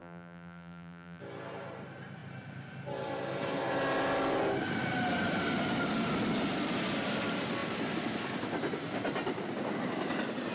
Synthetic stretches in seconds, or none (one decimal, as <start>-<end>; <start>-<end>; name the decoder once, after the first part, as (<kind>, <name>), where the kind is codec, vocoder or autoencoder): 0.0-1.2 (vocoder, BigVGAN v2)